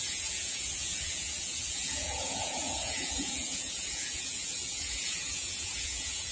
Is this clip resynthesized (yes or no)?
yes